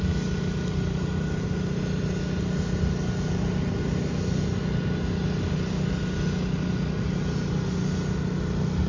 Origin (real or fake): real